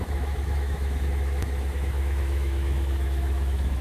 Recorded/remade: remade